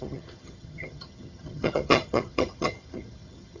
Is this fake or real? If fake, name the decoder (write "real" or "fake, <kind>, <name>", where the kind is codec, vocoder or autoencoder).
fake, vocoder, HiFi-GAN